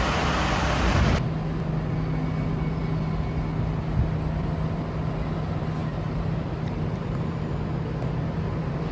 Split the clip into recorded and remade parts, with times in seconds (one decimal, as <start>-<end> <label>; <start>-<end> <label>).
0.0-5.8 recorded; 5.8-7.4 remade; 7.4-8.9 recorded